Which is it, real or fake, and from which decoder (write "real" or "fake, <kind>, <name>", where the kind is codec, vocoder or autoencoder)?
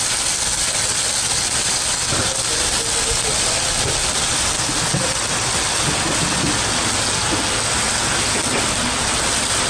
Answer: real